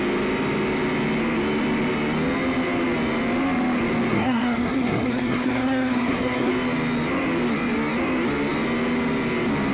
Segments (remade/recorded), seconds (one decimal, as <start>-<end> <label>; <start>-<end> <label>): 0.0-4.1 recorded; 4.1-6.5 remade; 6.5-9.7 recorded